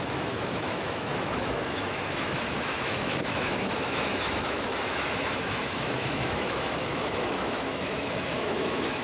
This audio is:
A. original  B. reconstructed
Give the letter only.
B